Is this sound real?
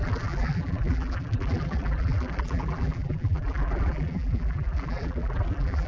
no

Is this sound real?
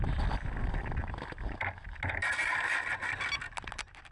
yes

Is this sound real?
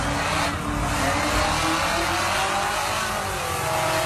yes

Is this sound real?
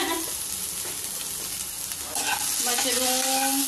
yes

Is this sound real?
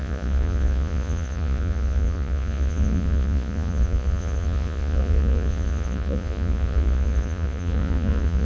no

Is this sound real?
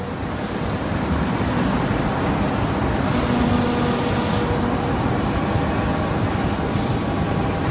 yes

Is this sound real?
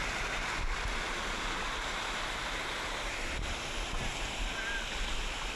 yes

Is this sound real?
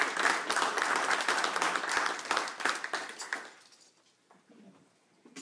yes